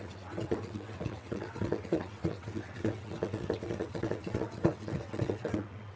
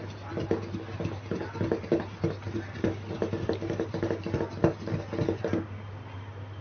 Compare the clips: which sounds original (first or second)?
second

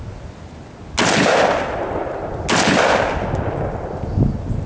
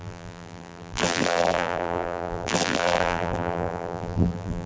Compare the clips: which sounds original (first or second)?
first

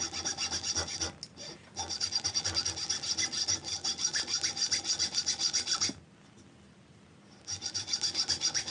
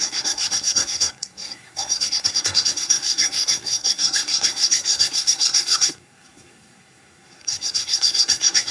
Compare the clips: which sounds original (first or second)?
first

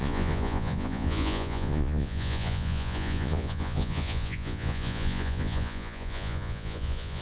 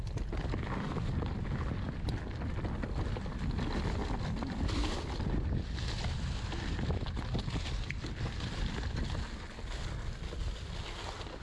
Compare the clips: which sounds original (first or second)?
second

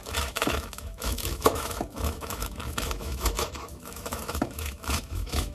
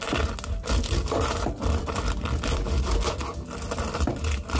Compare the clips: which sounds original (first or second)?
second